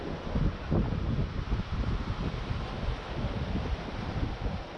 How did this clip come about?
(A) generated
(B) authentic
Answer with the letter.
B